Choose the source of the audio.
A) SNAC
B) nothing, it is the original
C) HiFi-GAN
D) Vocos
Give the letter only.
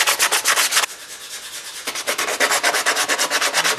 B